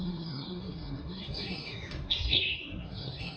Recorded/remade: remade